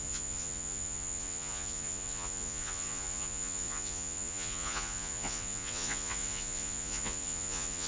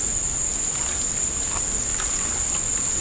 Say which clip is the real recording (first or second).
second